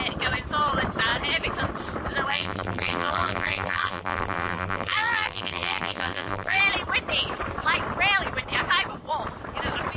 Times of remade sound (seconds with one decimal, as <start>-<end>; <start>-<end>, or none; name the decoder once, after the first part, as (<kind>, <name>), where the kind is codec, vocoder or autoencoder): 2.3-6.6 (vocoder, BigVGAN v2)